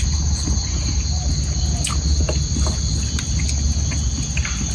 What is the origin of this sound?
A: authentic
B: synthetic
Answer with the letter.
A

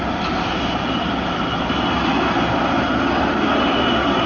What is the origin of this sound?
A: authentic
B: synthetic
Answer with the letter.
A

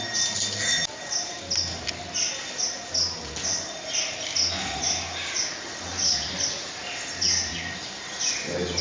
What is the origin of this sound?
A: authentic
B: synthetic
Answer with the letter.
A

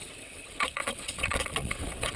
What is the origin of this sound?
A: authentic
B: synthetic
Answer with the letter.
B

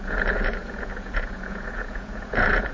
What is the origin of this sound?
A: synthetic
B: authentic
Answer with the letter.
A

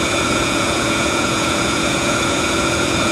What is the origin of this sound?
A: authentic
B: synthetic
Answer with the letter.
B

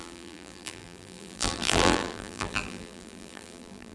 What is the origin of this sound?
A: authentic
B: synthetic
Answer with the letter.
B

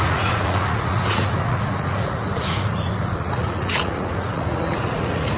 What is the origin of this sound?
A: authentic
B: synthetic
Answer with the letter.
B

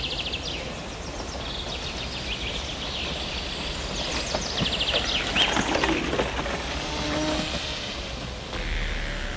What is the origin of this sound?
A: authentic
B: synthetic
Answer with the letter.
A